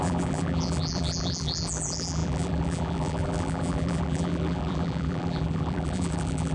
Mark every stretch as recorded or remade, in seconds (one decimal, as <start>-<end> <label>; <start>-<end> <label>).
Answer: 0.0-6.5 remade